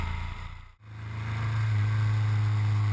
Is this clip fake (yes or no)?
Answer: no